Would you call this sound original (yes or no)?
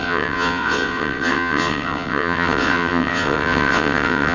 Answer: no